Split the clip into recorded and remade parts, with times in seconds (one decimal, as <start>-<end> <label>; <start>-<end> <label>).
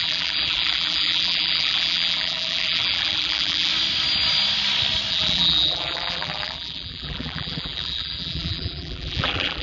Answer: 0.0-3.7 remade; 3.7-5.1 recorded; 5.1-9.6 remade